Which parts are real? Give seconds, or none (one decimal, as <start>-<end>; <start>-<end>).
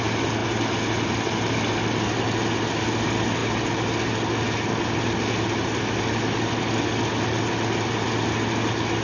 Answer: 0.0-9.0